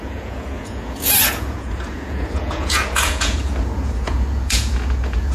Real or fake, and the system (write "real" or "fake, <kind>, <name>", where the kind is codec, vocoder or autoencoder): fake, vocoder, Vocos